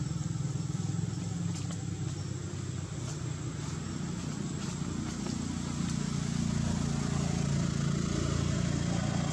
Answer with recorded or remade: recorded